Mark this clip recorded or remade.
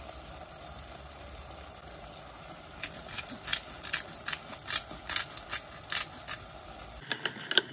recorded